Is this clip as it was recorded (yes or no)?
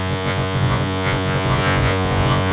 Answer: no